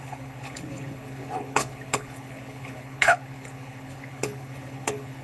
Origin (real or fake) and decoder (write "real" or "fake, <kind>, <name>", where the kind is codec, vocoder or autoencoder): fake, codec, HILCodec